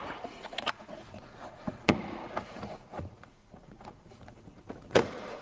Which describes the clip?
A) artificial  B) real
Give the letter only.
A